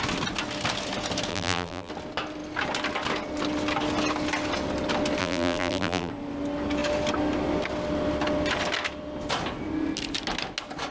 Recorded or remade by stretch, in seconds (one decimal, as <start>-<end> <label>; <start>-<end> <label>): 0.0-1.3 recorded; 1.3-1.9 remade; 1.9-5.2 recorded; 5.2-6.1 remade; 6.1-10.9 recorded